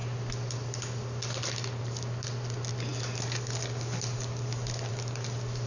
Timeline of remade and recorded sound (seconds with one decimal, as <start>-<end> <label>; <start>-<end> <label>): 0.0-5.7 recorded